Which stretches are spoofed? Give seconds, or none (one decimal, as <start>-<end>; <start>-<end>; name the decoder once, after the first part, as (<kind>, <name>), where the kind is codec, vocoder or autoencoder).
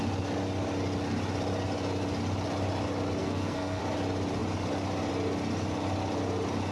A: 3.2-3.8 (codec, SNAC)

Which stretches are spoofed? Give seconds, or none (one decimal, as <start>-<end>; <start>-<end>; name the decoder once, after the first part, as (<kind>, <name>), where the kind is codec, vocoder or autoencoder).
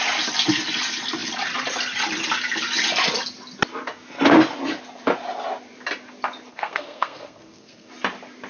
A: 6.5-7.9 (codec, SNAC)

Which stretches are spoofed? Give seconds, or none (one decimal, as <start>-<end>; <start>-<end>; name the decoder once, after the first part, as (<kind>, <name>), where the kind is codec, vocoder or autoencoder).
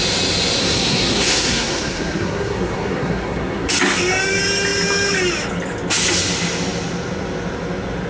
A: 0.6-3.7 (codec, SNAC)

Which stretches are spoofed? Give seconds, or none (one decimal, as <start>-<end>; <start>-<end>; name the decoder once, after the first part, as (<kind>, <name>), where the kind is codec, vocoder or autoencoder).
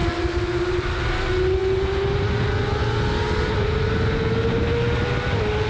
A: none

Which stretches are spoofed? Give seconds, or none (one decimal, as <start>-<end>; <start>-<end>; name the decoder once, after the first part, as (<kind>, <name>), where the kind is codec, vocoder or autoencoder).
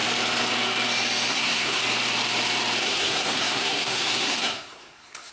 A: 1.3-1.8 (codec, SNAC); 2.8-5.3